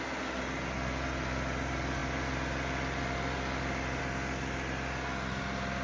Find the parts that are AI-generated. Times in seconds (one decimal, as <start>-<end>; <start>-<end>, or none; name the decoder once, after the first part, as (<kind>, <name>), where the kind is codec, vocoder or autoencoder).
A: none